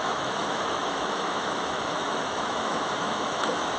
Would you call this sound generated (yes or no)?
yes